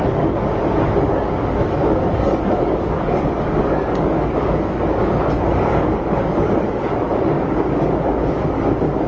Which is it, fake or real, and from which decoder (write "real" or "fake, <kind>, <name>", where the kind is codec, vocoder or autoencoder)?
fake, codec, DAC